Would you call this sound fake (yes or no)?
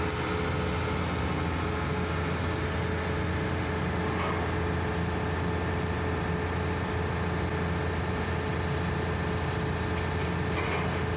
no